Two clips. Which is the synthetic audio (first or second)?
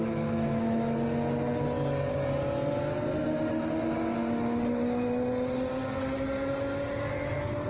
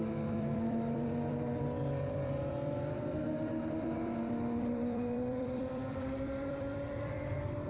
second